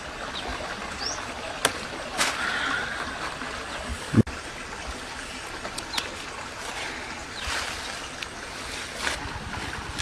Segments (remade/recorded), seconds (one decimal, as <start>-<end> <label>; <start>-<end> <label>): 0.0-3.9 recorded; 3.9-4.5 remade; 4.5-7.2 recorded; 7.2-7.7 remade; 7.7-10.0 recorded